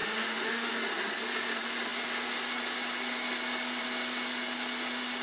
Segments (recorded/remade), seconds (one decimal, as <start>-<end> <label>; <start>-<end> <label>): 0.0-0.7 remade; 0.7-5.2 recorded